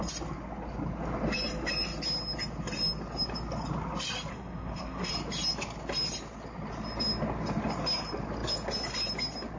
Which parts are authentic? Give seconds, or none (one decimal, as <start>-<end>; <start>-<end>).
0.0-4.3; 5.1-9.6